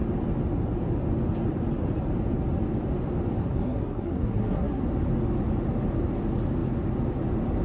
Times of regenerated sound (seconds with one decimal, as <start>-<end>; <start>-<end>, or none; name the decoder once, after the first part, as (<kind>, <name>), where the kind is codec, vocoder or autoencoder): 3.4-4.8 (codec, SNAC)